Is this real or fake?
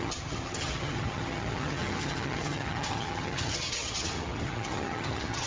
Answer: fake